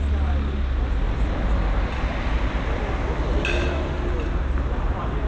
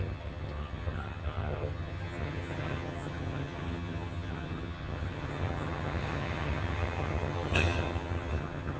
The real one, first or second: first